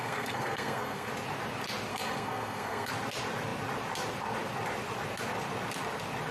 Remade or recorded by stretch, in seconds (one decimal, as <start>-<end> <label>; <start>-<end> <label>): 0.0-1.1 remade; 1.1-1.9 recorded; 1.9-2.9 remade; 2.9-6.3 recorded